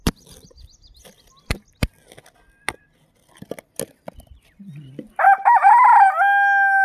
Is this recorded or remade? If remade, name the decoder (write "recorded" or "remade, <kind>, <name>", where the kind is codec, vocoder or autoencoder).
recorded